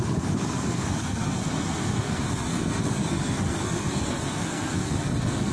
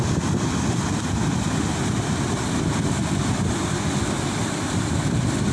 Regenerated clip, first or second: first